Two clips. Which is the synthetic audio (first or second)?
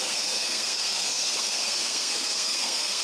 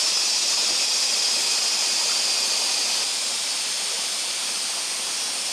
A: first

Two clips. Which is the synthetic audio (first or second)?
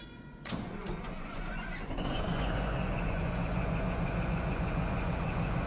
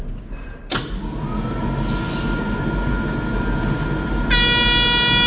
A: first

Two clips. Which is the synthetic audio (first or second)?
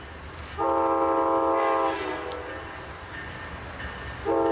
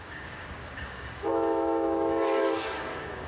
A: second